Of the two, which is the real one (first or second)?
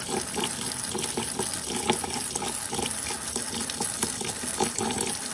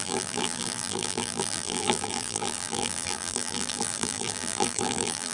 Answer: first